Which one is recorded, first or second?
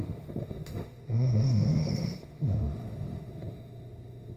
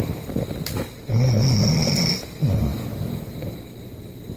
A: second